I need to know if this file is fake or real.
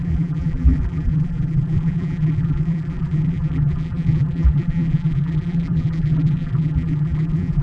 fake